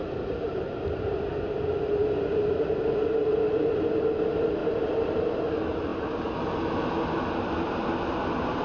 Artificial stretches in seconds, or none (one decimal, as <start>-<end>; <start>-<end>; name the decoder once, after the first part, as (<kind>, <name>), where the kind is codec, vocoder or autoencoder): 0.0-1.2 (vocoder, BigVGAN v2); 4.6-5.3